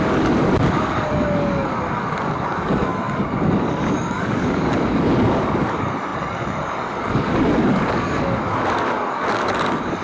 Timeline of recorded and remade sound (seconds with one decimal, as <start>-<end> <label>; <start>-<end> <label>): 0.0-10.0 remade